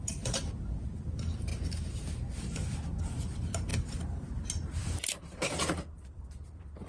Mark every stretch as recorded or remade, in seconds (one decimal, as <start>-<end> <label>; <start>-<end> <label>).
0.0-3.7 recorded; 3.7-4.3 remade; 4.3-6.9 recorded